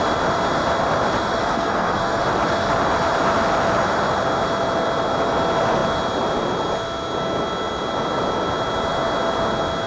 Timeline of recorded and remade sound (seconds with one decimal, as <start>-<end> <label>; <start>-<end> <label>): 0.0-1.4 recorded; 1.4-2.2 remade; 2.2-9.9 recorded